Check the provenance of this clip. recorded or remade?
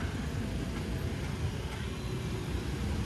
recorded